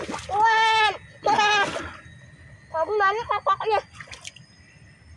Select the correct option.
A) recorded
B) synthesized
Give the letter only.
A